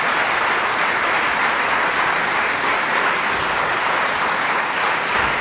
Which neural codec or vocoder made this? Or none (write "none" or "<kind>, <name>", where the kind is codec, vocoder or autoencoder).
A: none